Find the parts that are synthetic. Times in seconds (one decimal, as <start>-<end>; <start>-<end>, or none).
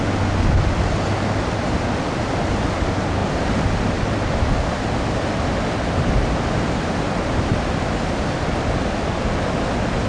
none